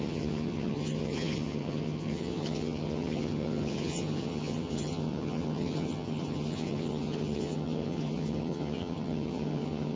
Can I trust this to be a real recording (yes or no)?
no